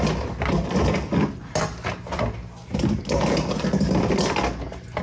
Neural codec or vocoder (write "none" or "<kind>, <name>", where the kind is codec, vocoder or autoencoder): none